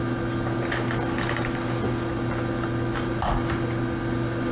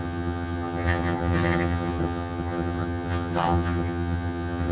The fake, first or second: second